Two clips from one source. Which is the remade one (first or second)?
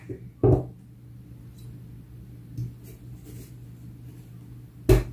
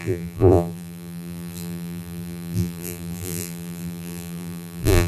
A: second